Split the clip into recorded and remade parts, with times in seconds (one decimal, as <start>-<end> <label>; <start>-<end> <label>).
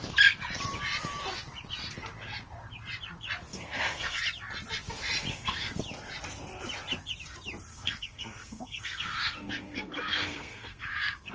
0.0-3.5 recorded; 3.5-4.2 remade; 4.2-5.3 recorded; 5.3-5.8 remade; 5.8-7.7 recorded; 7.7-11.3 remade